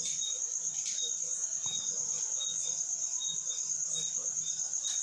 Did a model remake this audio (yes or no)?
no